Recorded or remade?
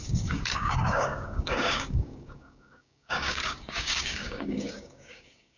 remade